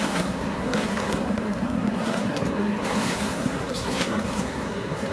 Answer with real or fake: fake